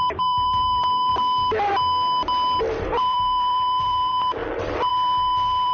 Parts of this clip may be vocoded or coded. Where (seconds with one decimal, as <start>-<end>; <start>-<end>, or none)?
0.0-1.1; 2.6-4.4; 4.9-5.7